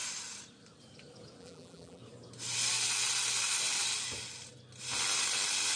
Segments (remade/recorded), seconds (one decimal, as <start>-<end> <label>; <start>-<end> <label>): 0.0-1.4 recorded; 1.4-2.0 remade; 2.0-5.8 recorded